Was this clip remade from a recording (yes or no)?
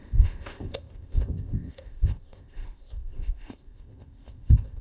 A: yes